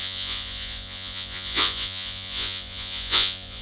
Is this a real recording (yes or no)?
no